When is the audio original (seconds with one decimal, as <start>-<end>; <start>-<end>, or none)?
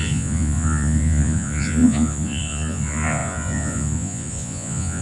none